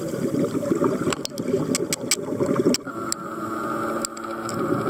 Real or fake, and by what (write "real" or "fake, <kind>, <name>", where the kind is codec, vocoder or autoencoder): real